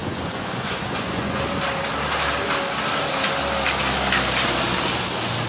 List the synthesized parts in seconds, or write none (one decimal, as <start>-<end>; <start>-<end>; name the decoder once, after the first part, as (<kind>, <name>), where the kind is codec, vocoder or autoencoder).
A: 0.0-1.4 (vocoder, Vocos)